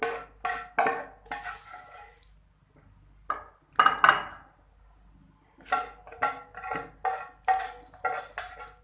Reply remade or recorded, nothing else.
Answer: recorded